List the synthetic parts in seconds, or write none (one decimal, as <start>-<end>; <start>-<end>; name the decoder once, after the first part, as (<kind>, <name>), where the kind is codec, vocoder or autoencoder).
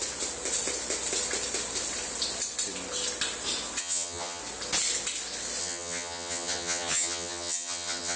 3.8-4.4 (vocoder, HiFi-GAN); 5.6-8.2